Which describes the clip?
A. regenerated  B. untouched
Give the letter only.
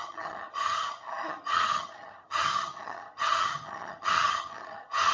A